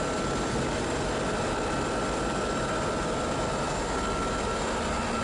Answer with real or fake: fake